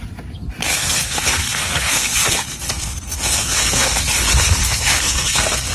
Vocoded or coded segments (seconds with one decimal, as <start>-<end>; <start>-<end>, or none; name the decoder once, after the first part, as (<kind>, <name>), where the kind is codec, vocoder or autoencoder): 0.6-4.0 (codec, SNAC); 4.6-5.7